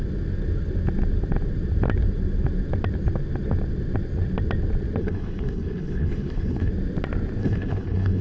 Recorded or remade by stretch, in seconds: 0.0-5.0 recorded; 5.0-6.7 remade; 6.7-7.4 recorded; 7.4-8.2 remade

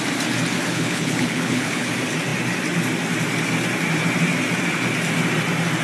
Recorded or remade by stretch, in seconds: 0.0-0.7 recorded; 0.7-1.9 remade; 1.9-5.8 recorded